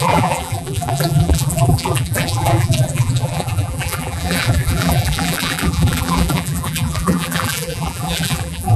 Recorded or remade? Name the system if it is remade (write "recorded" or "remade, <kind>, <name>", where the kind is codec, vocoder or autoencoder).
remade, vocoder, BigVGAN v2